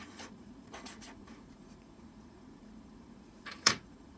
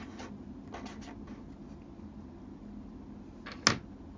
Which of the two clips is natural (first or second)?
second